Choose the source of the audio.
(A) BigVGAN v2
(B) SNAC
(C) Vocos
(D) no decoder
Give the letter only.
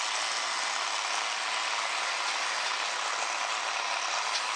D